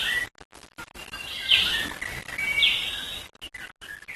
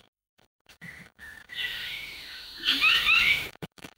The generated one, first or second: second